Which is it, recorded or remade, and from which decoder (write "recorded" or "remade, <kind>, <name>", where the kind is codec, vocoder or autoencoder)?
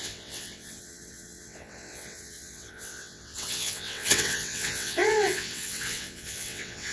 remade, vocoder, WaveNeXt